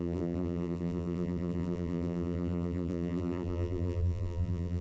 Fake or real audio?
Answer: fake